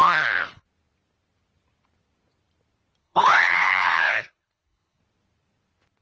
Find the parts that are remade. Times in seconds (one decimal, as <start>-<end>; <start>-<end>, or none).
3.0-5.0